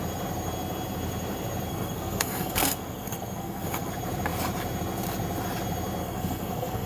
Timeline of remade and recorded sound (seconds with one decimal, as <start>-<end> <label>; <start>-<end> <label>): 0.0-1.7 recorded; 1.7-3.9 remade; 3.9-6.0 recorded; 6.0-6.9 remade